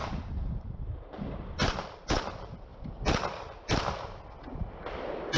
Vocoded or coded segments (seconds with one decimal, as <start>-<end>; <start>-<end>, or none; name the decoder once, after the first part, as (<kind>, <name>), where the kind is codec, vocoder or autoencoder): 0.0-1.9 (vocoder, BigVGAN v2)

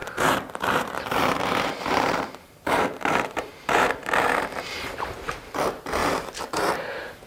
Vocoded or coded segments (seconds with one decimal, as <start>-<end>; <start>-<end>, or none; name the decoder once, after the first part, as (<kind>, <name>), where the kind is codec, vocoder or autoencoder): 0.0-7.3 (vocoder, BigVGAN v2)

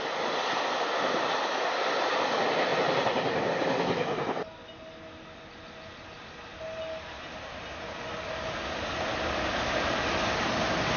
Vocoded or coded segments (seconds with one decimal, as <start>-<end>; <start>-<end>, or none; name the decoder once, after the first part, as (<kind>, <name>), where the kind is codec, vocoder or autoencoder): none

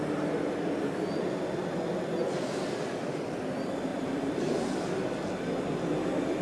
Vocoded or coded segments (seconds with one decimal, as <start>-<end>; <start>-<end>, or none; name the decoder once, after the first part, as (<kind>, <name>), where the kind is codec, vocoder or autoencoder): 3.9-4.6 (vocoder, BigVGAN v2)

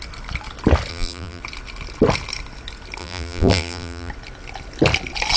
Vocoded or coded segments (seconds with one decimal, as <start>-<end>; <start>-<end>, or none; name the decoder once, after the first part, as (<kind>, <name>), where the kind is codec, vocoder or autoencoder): 0.9-1.4 (vocoder, BigVGAN v2); 3.0-4.1